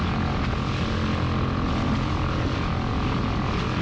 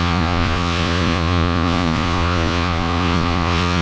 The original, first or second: first